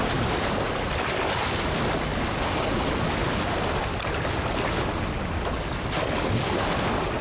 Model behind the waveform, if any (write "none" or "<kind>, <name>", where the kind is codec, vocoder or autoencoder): none